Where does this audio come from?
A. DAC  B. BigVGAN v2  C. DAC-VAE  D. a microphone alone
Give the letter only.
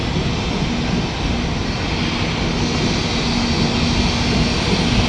D